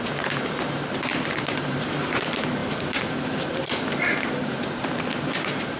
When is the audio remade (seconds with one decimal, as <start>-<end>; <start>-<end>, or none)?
1.1-2.2